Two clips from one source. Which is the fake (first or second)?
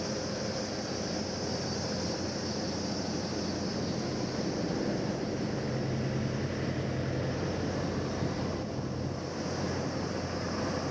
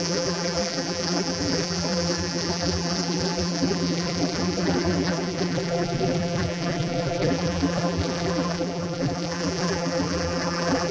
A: second